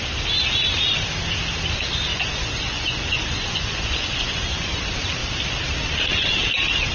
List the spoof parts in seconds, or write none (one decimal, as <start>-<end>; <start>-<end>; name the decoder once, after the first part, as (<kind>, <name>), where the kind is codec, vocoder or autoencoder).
2.1-4.8 (vocoder, Vocos)